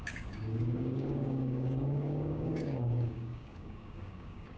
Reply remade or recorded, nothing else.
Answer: remade